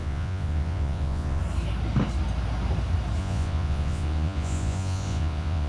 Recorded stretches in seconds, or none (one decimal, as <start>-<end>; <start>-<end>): 1.4-3.2